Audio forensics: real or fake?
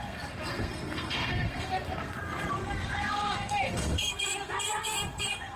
fake